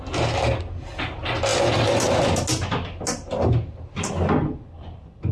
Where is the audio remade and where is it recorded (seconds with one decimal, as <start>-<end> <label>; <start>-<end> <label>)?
0.0-5.3 recorded